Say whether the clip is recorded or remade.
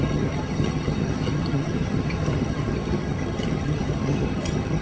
remade